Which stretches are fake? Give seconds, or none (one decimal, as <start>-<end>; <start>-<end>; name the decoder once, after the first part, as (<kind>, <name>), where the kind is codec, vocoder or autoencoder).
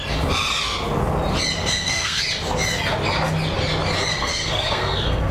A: 1.6-2.2 (codec, SNAC); 4.1-5.3